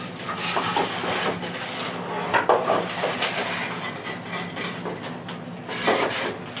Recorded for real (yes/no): yes